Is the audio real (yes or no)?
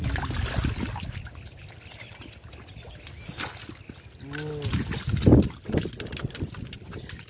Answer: yes